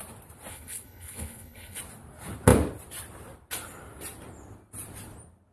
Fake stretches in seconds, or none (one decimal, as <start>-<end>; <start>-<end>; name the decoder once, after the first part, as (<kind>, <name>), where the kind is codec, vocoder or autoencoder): 0.5-1.8 (codec, HILCodec)